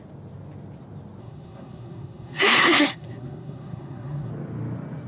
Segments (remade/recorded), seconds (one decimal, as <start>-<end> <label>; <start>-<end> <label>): 0.0-1.2 recorded; 1.2-4.3 remade; 4.3-5.1 recorded